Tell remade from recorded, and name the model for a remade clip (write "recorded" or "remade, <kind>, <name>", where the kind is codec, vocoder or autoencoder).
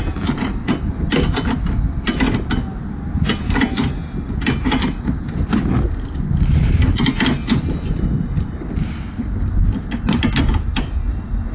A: recorded